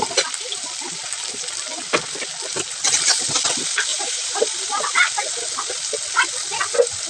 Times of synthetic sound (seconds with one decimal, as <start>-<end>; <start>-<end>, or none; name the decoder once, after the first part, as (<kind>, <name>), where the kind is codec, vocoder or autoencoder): 3.9-5.2 (vocoder, BigVGAN v2)

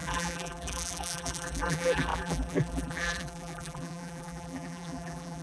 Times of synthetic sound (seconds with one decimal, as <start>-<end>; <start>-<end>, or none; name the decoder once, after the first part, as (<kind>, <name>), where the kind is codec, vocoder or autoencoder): 0.0-5.4 (vocoder, BigVGAN v2)

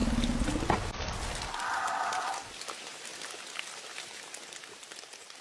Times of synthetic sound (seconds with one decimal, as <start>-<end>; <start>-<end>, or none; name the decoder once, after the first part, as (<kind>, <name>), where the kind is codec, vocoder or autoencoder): 2.6-3.1 (vocoder, BigVGAN v2); 3.9-5.4

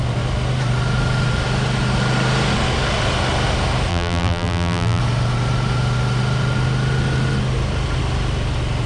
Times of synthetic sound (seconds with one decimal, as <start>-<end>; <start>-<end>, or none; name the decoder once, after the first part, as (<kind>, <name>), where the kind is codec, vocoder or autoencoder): 3.9-5.0 (vocoder, BigVGAN v2)

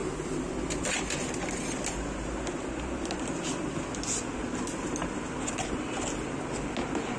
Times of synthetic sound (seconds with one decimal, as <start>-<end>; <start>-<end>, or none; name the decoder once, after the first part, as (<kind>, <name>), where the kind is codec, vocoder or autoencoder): none

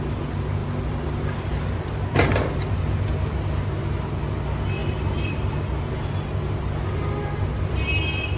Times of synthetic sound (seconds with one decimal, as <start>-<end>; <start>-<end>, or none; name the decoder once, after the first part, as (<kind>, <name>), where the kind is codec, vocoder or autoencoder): 0.6-2.7 (vocoder, BigVGAN v2); 4.8-5.6